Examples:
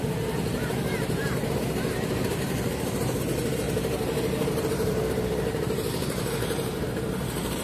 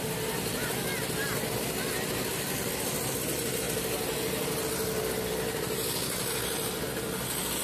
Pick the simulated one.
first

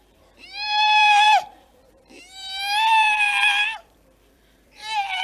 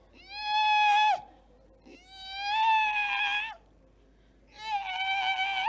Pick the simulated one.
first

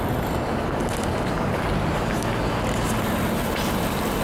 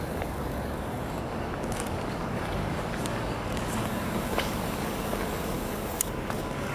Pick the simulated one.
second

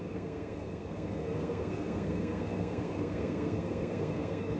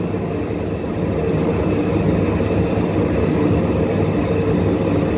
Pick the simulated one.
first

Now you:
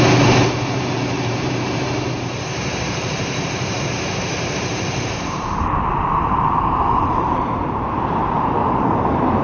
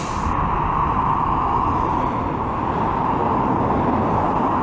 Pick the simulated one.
first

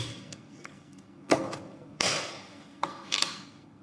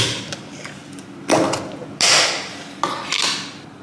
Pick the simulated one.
first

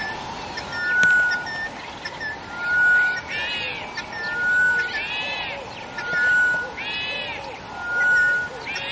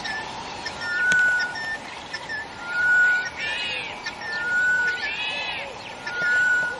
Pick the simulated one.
second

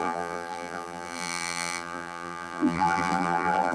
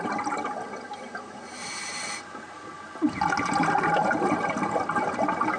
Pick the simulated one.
first